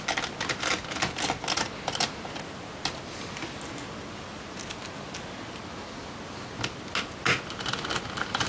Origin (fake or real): real